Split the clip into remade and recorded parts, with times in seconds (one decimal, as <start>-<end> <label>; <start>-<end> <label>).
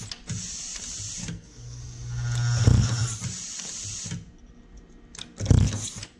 0.0-1.2 recorded; 1.2-1.8 remade; 1.8-6.2 recorded